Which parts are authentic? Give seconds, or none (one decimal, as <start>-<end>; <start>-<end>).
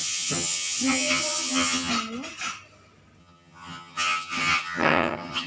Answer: 1.9-3.2